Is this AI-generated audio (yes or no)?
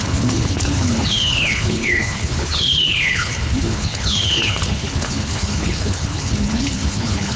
yes